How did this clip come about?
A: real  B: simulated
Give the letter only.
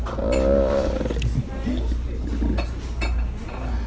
A